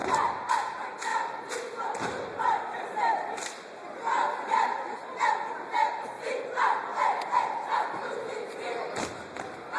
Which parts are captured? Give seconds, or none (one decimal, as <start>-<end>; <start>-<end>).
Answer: 0.5-1.1; 5.2-6.9